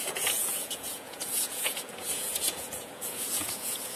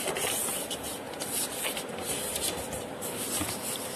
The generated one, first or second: first